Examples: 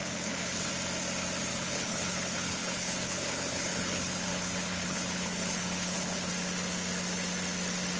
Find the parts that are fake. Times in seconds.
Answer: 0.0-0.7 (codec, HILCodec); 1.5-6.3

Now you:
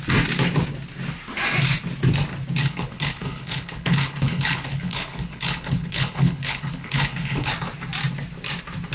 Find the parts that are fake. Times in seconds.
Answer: 2.6-7.5 (codec, HILCodec)

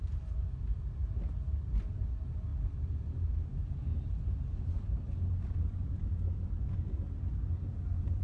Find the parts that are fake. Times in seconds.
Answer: none

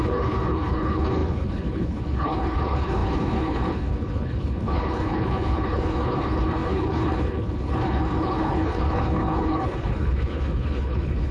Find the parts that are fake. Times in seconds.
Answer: 0.0-11.3 (codec, HILCodec)

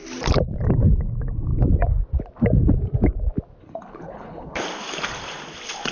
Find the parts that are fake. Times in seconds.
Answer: 3.6-4.6 (codec, HILCodec)

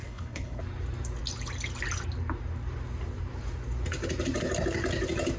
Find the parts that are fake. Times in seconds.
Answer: 0.0-0.6 (codec, HILCodec)

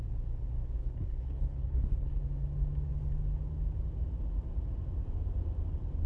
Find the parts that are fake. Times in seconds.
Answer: 0.8-2.2 (codec, HILCodec)